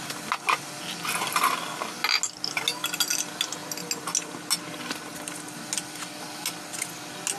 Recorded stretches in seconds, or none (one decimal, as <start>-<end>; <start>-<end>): 0.0-7.4